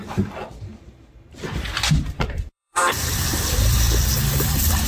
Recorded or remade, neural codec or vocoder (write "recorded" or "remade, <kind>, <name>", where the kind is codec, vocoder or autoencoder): remade, vocoder, BigVGAN v2